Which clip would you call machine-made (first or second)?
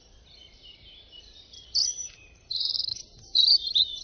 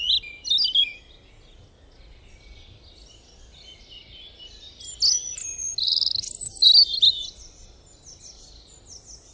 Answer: first